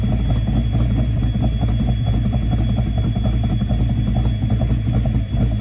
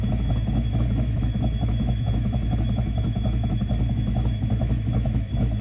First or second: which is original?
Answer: first